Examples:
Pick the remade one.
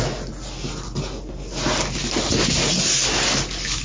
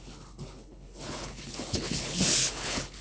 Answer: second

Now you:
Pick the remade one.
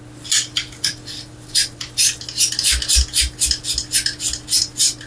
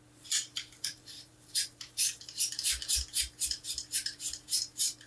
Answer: second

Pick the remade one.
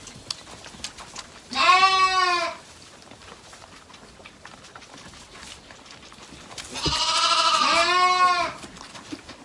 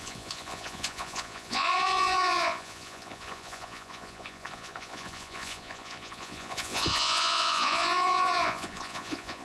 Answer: second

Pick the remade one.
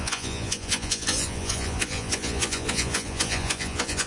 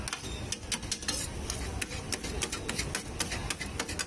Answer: first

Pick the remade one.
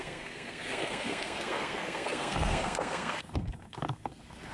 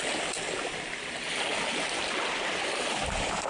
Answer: first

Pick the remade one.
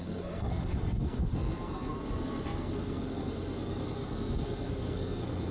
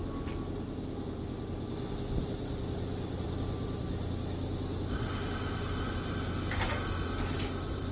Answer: first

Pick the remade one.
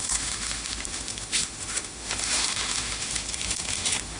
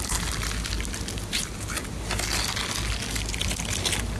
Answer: first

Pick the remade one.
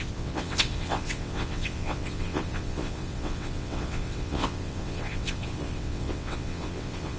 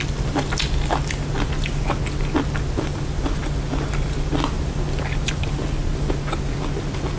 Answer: first